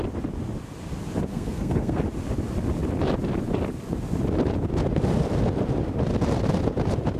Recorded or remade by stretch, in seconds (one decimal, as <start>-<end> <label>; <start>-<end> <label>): 0.0-1.3 recorded; 1.3-2.0 remade; 2.0-7.2 recorded